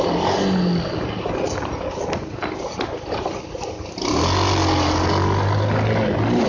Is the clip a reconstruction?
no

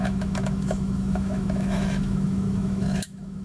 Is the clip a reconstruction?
yes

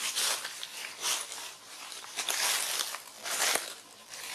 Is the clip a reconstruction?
no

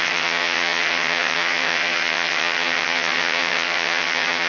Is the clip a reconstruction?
yes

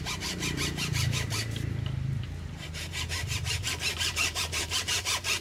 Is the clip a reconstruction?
yes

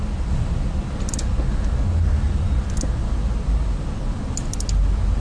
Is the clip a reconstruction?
no